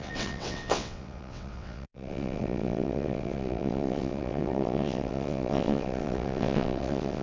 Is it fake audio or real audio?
fake